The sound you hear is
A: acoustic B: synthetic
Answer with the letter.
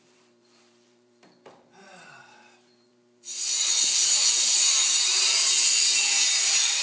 B